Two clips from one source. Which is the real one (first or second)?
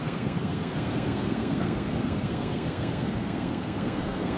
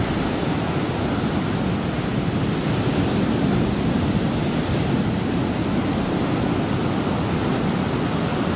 second